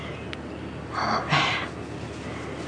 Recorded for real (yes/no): yes